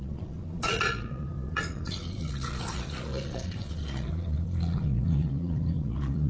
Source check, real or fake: fake